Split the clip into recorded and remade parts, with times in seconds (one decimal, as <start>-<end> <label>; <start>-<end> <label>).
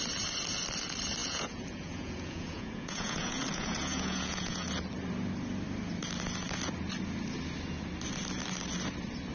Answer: 0.0-1.2 recorded; 1.2-4.7 remade; 4.7-9.3 recorded